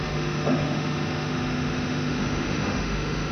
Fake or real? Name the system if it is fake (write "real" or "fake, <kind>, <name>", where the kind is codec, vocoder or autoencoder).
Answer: fake, autoencoder, DAC-VAE